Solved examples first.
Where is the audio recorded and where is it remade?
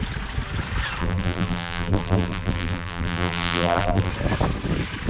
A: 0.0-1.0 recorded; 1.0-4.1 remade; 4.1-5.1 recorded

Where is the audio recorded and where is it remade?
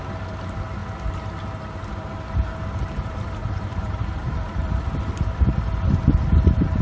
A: 0.0-3.4 recorded; 3.4-4.8 remade; 4.8-6.8 recorded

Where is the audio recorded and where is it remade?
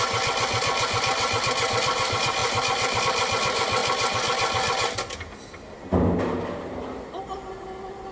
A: 0.0-2.4 recorded; 2.4-3.0 remade; 3.0-8.1 recorded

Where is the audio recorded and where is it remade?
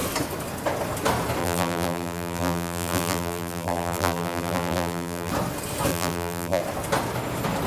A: 0.0-1.4 recorded; 1.4-5.3 remade; 5.3-5.9 recorded; 5.9-6.6 remade; 6.6-7.7 recorded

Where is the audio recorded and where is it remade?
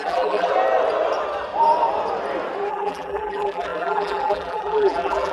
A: 0.0-0.5 remade; 0.5-2.7 recorded; 2.7-5.3 remade